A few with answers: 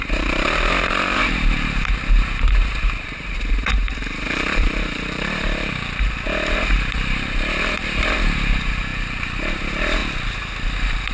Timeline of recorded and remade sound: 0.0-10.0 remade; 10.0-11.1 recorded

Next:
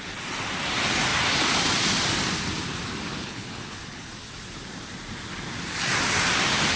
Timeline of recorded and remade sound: 0.0-3.2 recorded; 3.2-4.1 remade; 4.1-6.8 recorded